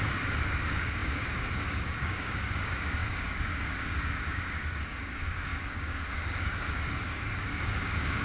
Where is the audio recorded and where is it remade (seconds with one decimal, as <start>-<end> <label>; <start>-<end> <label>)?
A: 0.0-8.2 remade